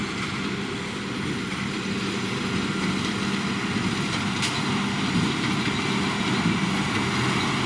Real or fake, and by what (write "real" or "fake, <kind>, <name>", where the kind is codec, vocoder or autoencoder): real